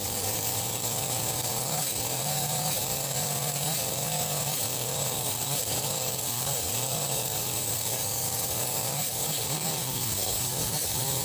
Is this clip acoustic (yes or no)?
no